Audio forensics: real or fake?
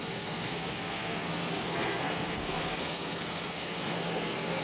fake